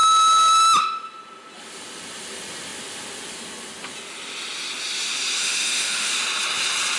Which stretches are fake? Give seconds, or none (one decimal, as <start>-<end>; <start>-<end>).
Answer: 5.4-6.1